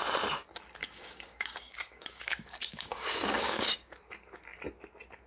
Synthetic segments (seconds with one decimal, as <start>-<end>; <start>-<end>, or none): 0.8-4.0